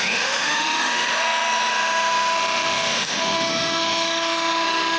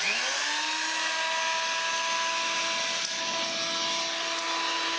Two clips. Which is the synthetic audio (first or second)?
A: first